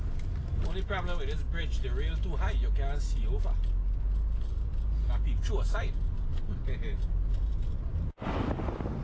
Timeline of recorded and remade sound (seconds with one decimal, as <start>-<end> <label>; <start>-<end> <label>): 0.0-9.0 recorded